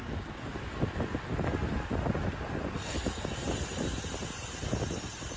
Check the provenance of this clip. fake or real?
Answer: real